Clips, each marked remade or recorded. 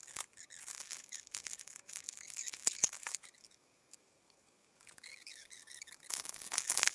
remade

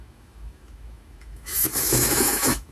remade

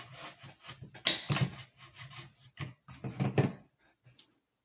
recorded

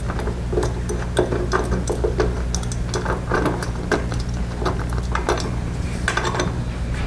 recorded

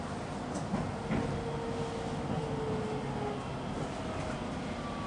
recorded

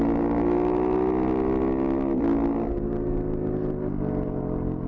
recorded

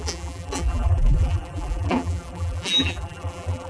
remade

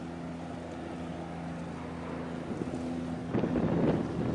recorded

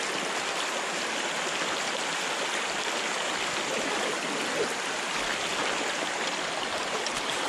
recorded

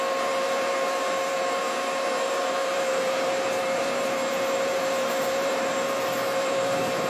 remade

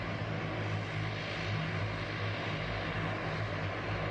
recorded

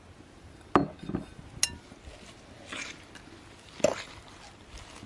recorded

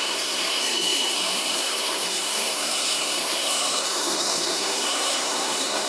remade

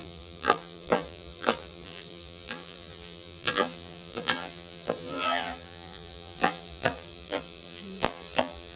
remade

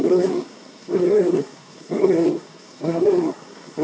remade